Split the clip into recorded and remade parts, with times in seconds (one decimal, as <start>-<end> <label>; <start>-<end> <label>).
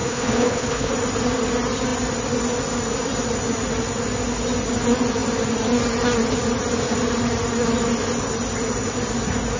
0.0-0.9 remade; 0.9-9.6 recorded